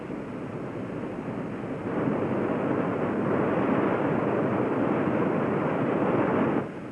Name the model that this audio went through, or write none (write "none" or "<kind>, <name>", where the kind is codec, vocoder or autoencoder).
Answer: none